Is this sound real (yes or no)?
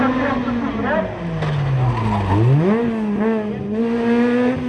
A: yes